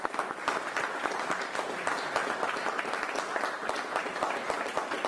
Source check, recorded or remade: recorded